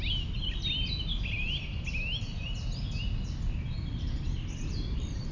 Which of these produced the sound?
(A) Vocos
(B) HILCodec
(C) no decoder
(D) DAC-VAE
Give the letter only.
C